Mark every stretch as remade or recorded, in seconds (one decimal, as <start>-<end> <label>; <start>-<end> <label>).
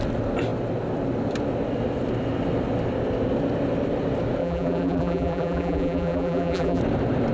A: 0.0-4.4 recorded; 4.4-6.8 remade; 6.8-7.3 recorded